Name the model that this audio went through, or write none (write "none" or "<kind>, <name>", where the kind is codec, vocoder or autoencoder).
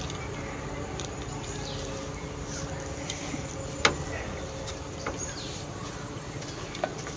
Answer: none